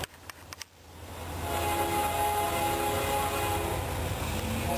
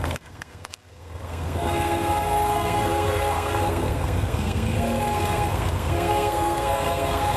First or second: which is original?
first